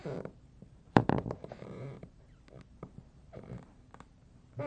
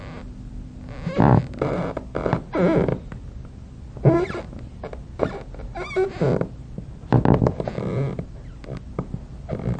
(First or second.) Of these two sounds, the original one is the second